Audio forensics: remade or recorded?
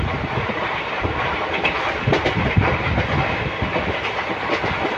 recorded